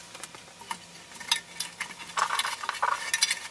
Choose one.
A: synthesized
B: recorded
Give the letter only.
B